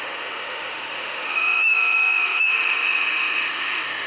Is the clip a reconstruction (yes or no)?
yes